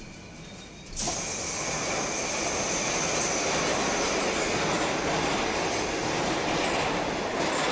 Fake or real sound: real